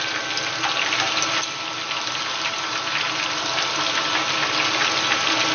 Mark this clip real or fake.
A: real